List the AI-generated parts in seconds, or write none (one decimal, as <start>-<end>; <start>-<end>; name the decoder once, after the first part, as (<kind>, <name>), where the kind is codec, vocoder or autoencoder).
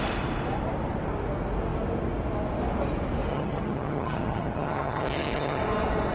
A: 3.3-5.6 (vocoder, HiFi-GAN)